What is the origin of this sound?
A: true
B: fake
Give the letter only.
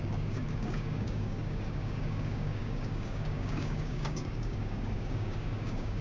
B